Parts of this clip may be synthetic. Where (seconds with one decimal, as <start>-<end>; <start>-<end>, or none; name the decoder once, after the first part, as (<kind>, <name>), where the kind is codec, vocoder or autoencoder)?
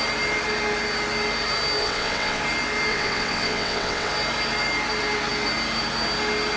1.8-2.4 (vocoder, WaveNeXt); 2.9-4.1